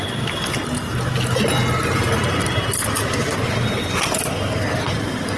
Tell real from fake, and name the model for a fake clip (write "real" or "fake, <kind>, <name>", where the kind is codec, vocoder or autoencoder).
real